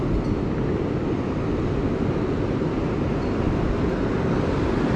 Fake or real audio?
real